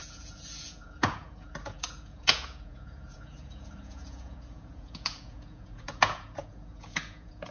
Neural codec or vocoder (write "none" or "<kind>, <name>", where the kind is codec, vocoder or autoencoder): vocoder, Vocos